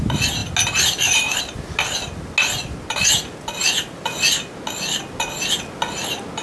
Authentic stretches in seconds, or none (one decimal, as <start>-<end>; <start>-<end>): 0.0-6.4